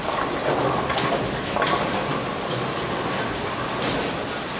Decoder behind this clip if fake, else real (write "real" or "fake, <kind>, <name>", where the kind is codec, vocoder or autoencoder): real